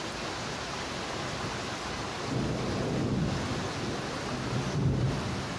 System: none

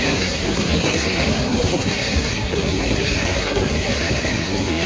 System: codec, SNAC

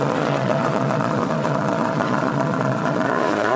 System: vocoder, Vocos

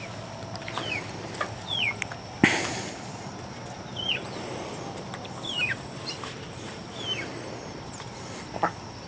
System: none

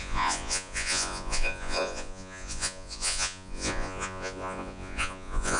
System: vocoder, Vocos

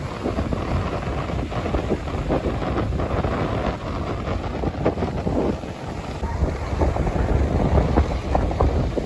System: none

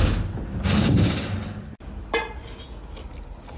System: none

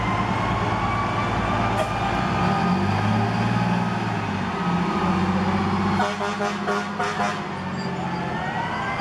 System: none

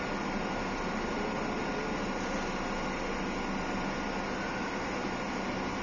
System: none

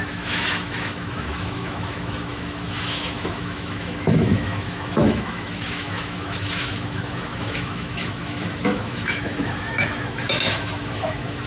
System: autoencoder, DAC-VAE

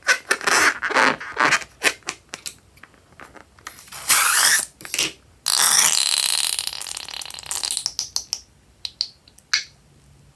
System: none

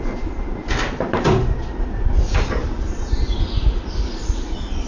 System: vocoder, BigVGAN v2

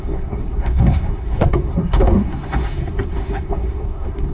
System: codec, SNAC